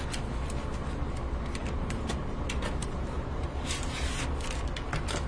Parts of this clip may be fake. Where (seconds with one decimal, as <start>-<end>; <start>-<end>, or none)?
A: 1.6-2.2; 2.8-4.2